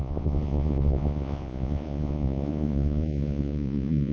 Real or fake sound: fake